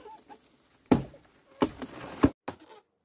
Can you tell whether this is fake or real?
real